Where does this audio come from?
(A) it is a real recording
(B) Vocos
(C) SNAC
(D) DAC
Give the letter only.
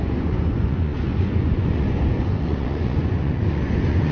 B